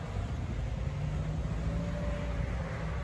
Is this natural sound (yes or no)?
yes